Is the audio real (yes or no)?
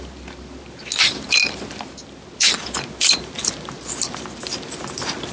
yes